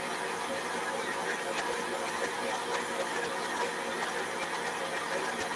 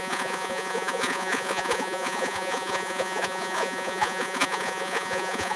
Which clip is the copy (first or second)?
second